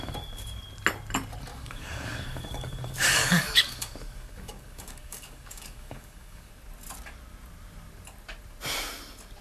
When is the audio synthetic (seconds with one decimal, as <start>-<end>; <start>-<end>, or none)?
1.5-6.5